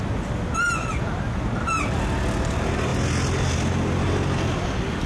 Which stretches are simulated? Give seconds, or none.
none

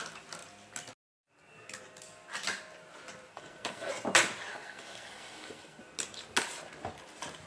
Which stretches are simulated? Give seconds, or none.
3.3-3.9 (codec, SNAC); 4.5-5.8

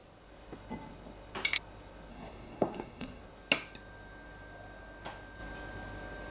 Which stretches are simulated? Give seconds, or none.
2.1-3.2 (codec, SNAC)

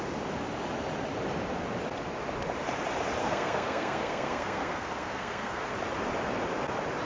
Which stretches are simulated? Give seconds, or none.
3.2-5.7 (codec, SNAC)

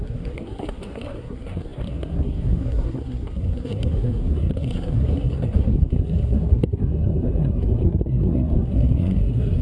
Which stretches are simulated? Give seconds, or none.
0.0-9.6 (codec, SNAC)

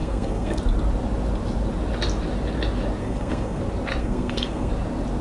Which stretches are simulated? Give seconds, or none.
0.0-0.6 (codec, SNAC); 3.0-3.6; 4.0-4.7

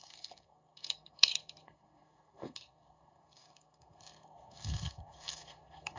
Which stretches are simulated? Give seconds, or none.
0.0-6.0 (codec, SNAC)

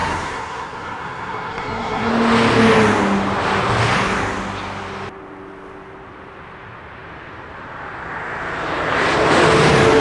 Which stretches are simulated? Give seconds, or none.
0.0-2.1 (codec, SNAC)